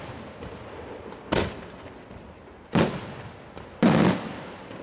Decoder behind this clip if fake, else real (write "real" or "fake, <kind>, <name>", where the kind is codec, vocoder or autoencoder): real